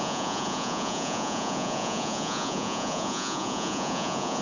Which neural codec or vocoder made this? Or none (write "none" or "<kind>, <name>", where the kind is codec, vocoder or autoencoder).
vocoder, Vocos